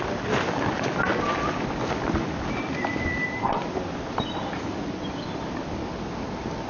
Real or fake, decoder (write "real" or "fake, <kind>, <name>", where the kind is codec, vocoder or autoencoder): real